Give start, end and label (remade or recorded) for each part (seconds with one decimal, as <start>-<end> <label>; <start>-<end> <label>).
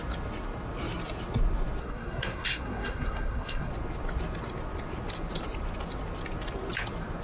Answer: 0.0-1.8 recorded; 1.8-3.7 remade; 3.7-7.2 recorded